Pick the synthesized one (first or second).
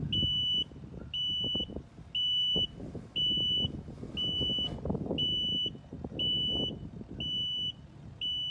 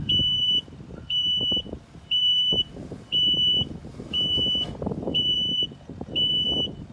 second